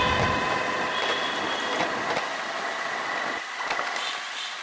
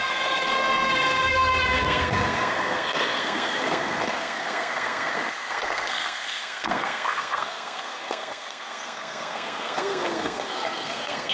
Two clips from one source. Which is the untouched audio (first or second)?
first